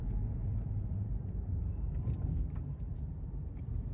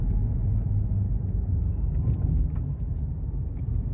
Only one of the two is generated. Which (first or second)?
first